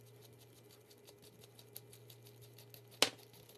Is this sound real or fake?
real